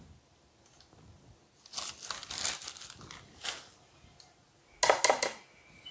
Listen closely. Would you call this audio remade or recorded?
recorded